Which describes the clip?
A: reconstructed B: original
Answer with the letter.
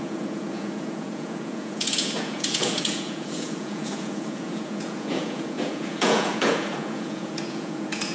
A